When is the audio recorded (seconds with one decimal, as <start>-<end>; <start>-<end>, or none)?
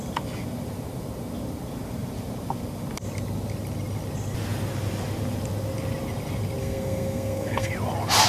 0.0-6.6; 7.7-8.3